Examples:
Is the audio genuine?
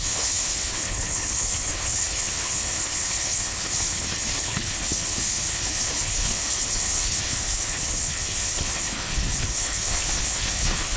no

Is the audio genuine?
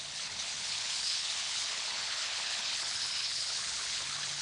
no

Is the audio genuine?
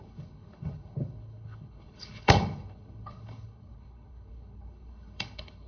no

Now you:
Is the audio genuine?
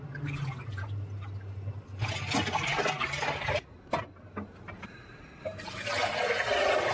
yes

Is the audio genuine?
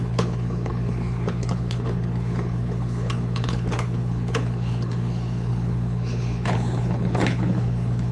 no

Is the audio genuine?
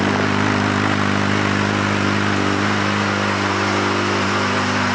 yes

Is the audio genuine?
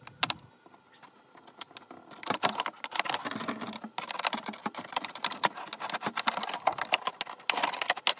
yes